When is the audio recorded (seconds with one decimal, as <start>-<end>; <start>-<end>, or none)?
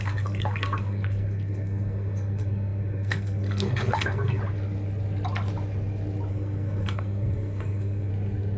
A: 4.4-6.3; 8.1-8.6